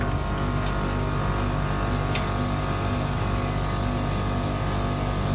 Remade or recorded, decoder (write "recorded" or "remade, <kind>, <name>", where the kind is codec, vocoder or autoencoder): recorded